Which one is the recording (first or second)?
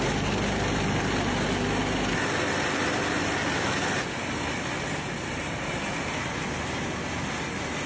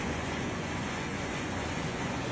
first